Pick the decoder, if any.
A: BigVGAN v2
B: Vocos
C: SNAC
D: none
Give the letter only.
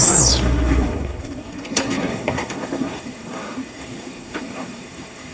C